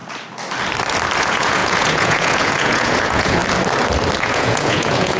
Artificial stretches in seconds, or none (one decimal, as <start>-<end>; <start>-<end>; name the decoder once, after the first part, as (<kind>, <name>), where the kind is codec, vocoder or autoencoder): 1.2-3.4 (vocoder, Vocos); 4.2-5.2